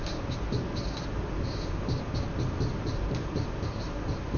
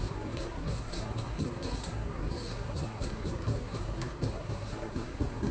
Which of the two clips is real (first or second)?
first